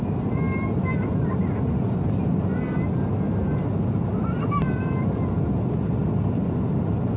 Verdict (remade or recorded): recorded